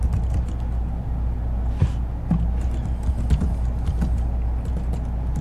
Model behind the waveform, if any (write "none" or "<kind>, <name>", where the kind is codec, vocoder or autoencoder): none